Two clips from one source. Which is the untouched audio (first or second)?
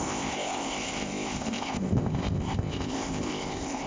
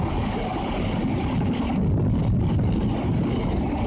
second